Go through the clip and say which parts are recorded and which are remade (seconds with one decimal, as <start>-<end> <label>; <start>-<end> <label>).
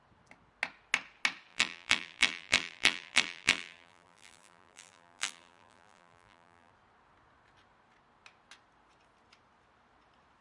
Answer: 0.0-1.5 recorded; 1.5-6.7 remade; 6.7-10.4 recorded